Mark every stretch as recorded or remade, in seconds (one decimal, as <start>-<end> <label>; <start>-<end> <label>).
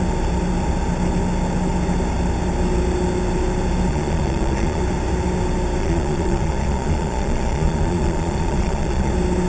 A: 0.0-3.9 recorded; 3.9-4.8 remade; 4.8-5.8 recorded; 5.8-9.1 remade; 9.1-9.5 recorded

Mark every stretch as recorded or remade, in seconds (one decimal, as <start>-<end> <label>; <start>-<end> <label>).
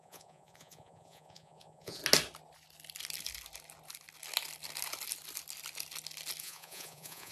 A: 0.0-2.0 remade; 2.0-6.4 recorded; 6.4-7.3 remade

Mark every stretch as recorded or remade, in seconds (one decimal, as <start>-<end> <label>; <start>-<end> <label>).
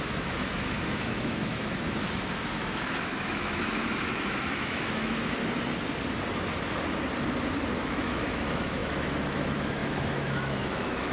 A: 0.0-5.4 remade; 5.4-7.8 recorded; 7.8-11.1 remade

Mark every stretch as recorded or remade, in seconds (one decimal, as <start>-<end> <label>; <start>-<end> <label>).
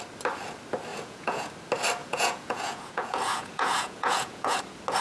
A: 0.0-0.9 recorded; 0.9-1.5 remade; 1.5-2.0 recorded; 2.0-4.6 remade; 4.6-5.0 recorded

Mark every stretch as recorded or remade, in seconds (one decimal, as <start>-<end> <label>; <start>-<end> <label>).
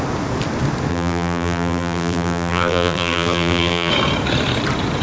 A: 0.0-0.9 recorded; 0.9-3.9 remade; 3.9-5.0 recorded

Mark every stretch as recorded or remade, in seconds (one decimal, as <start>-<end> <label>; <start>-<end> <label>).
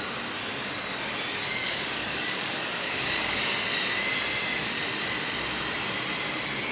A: 0.0-1.6 recorded; 1.6-3.2 remade; 3.2-6.7 recorded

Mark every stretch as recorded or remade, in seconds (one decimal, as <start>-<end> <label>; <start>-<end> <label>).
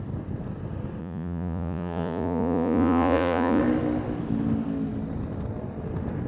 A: 0.0-1.0 recorded; 1.0-3.6 remade; 3.6-6.3 recorded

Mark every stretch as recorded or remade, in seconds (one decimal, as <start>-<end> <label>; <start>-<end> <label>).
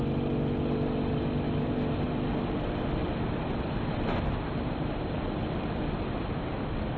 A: 0.0-3.0 recorded; 3.0-4.2 remade; 4.2-7.0 recorded